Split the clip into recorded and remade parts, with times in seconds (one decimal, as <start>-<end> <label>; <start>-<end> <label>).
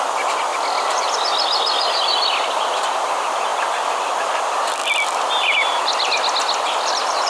0.0-0.5 recorded; 0.5-2.5 remade; 2.5-4.8 recorded; 4.8-7.3 remade